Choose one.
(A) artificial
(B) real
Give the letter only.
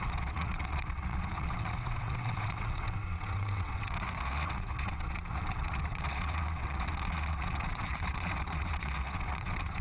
A